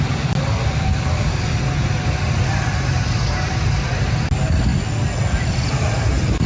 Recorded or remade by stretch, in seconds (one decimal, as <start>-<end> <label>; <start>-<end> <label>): 0.0-6.5 recorded